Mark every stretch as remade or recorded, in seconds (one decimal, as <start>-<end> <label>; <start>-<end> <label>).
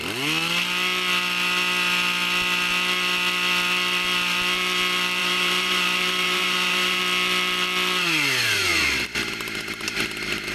0.0-5.2 recorded; 5.2-7.0 remade; 7.0-10.5 recorded